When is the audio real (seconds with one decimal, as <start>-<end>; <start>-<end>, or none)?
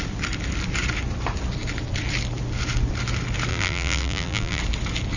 0.0-3.5; 4.6-5.2